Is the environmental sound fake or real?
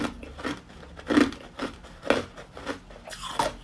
real